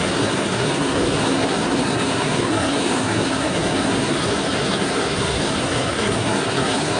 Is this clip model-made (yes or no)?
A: yes